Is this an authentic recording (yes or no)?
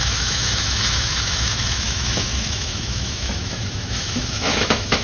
no